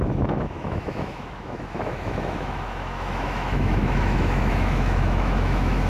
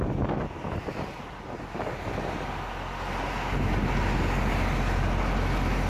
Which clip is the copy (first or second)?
first